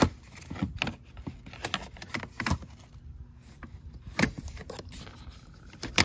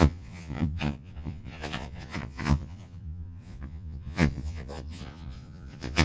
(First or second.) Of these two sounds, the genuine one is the first